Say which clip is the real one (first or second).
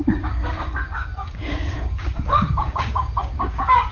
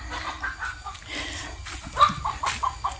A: second